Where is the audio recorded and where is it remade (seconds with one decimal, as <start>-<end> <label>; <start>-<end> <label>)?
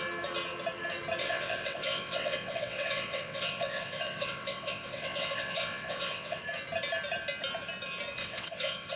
0.0-1.2 recorded; 1.2-6.4 remade; 6.4-8.2 recorded; 8.2-9.0 remade